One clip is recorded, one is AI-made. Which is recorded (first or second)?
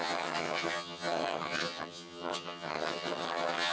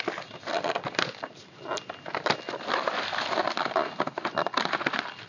second